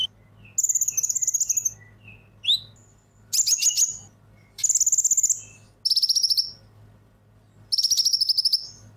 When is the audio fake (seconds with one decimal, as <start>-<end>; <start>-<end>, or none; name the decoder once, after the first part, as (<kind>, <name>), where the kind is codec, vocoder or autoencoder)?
none